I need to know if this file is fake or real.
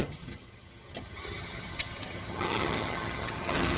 fake